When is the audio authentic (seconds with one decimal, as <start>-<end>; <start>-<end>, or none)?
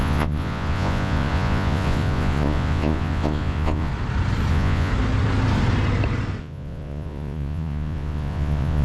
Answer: 3.9-4.5; 4.9-6.4